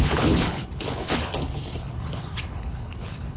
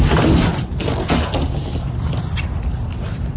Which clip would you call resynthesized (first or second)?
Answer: first